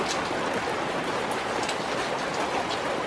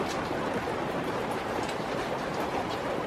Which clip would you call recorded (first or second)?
first